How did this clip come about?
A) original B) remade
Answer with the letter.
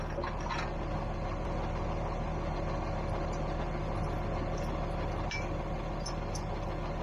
A